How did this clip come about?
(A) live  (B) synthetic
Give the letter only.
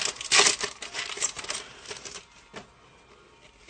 A